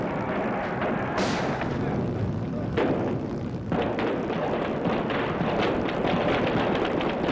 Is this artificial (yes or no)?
no